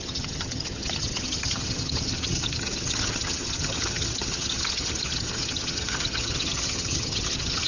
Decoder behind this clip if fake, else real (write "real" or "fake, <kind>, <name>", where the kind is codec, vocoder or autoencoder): fake, vocoder, HiFi-GAN